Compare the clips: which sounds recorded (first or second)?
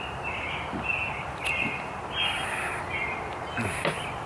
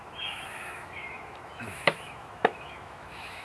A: first